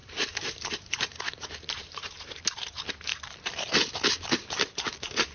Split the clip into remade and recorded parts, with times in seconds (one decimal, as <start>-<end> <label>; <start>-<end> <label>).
0.0-3.1 remade; 3.1-3.7 recorded; 3.7-5.3 remade